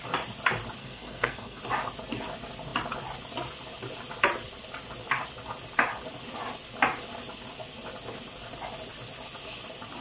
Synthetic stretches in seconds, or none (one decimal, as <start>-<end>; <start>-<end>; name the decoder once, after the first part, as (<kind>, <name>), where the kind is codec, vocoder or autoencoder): 0.8-1.6 (codec, SNAC)